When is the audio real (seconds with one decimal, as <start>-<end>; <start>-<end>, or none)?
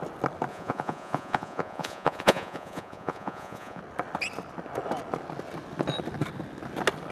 0.0-0.5; 3.8-7.1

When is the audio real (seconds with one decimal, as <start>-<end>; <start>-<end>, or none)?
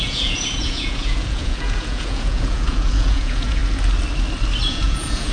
3.6-4.7